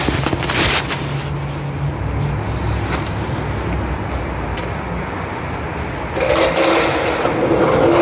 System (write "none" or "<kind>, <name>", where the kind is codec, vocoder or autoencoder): none